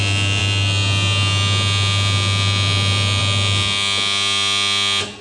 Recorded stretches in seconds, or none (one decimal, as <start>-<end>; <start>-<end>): 0.0-5.2